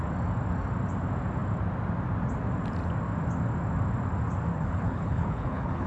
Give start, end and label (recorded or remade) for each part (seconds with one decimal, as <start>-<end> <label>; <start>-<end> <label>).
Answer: 0.0-4.5 recorded; 4.5-5.9 remade